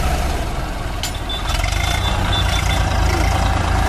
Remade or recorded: recorded